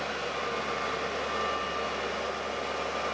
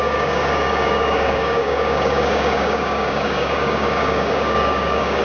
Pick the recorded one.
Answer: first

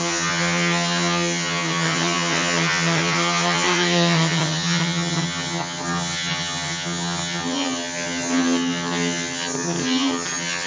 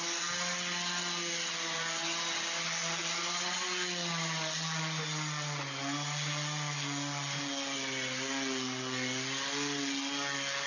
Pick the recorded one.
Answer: second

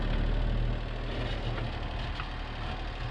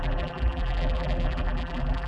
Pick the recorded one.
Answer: first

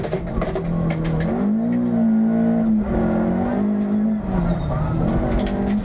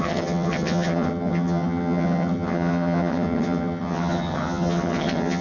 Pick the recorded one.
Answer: first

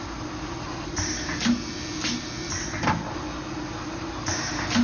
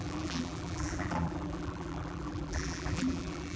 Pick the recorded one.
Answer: first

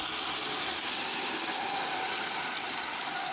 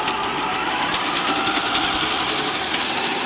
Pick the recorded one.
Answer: first